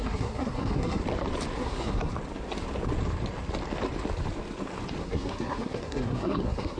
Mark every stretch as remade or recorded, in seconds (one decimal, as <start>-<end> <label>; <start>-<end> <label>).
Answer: 0.0-1.0 remade; 1.0-1.6 recorded; 1.6-2.1 remade; 2.1-5.0 recorded; 5.0-6.8 remade

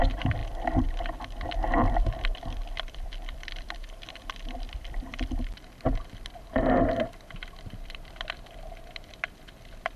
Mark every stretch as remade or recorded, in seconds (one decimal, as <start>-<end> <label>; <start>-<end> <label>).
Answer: 0.0-10.0 remade

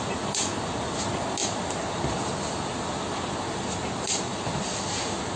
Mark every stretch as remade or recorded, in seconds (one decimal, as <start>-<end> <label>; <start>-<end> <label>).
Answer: 0.0-5.4 recorded

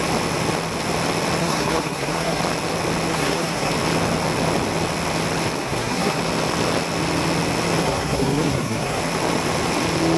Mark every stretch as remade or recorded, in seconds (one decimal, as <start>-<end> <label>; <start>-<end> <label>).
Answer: 0.0-1.4 recorded; 1.4-2.4 remade; 2.4-3.1 recorded; 3.1-3.7 remade; 3.7-5.6 recorded; 5.6-6.2 remade; 6.2-7.8 recorded; 7.8-9.0 remade; 9.0-10.2 recorded

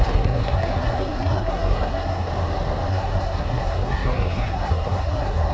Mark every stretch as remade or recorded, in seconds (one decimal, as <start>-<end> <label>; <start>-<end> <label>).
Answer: 0.0-2.3 remade; 2.3-2.9 recorded; 2.9-5.5 remade

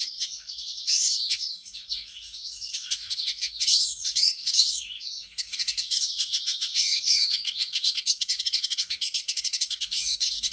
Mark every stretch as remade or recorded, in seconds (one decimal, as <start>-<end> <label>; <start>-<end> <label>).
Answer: 0.0-10.5 remade

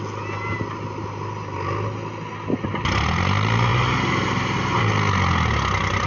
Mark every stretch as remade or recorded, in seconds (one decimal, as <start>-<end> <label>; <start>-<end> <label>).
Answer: 0.0-6.1 recorded

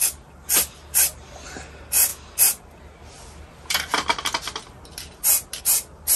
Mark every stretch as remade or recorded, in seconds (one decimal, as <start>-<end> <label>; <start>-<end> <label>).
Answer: 0.0-6.2 recorded